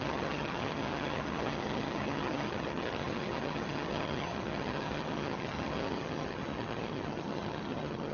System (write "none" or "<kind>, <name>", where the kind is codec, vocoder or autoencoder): vocoder, HiFi-GAN